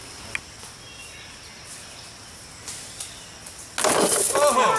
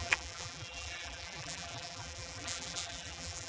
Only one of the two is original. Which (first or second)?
first